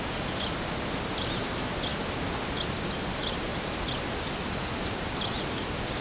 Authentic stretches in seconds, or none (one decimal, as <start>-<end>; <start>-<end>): 0.0-6.0